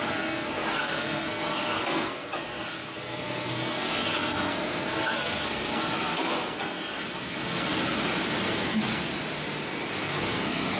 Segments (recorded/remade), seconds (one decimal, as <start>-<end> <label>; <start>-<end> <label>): 0.0-7.7 remade; 7.7-8.4 recorded; 8.4-9.1 remade; 9.1-9.9 recorded; 9.9-10.8 remade